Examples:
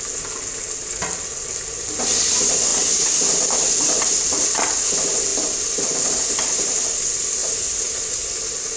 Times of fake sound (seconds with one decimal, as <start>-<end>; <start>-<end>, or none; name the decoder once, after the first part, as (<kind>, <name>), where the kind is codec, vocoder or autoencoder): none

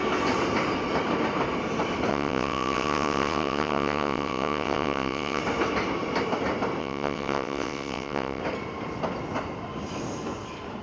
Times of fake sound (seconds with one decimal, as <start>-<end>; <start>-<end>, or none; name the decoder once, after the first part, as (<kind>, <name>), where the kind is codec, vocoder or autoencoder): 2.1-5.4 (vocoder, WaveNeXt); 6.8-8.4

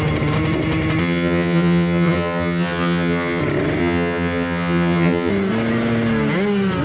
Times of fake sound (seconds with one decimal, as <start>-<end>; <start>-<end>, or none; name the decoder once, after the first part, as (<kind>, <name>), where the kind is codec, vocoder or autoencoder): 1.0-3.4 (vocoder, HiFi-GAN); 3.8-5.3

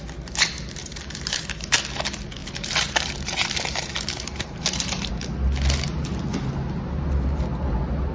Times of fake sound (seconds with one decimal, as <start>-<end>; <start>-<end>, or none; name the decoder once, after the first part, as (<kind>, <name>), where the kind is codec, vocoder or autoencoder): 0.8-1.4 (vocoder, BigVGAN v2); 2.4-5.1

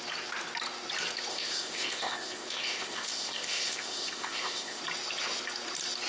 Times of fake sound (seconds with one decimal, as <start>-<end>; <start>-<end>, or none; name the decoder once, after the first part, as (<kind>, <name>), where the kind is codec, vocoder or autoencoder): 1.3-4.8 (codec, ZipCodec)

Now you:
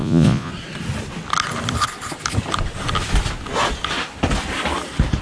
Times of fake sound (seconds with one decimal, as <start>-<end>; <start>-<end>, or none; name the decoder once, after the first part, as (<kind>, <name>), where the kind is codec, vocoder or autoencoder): 0.0-0.5 (vocoder, Vocos)

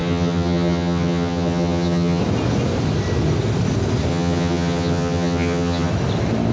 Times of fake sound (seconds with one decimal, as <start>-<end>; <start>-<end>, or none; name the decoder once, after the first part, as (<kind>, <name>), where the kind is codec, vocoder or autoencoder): 0.0-2.2 (vocoder, HiFi-GAN); 4.1-5.9